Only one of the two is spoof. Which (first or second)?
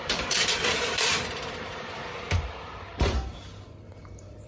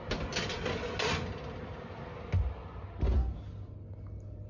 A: first